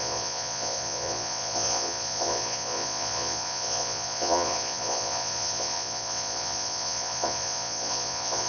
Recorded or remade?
remade